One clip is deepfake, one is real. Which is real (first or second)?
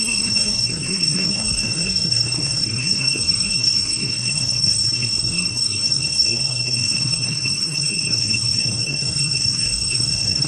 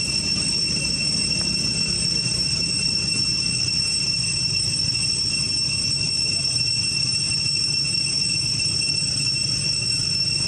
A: second